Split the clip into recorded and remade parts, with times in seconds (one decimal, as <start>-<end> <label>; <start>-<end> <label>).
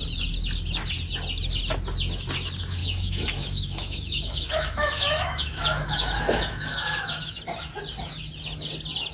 0.0-2.8 recorded; 2.8-7.4 remade; 7.4-9.1 recorded